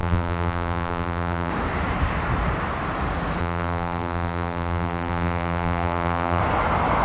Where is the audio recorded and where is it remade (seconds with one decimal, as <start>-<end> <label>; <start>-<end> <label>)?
0.0-1.5 remade; 1.5-3.4 recorded; 3.4-6.4 remade; 6.4-7.0 recorded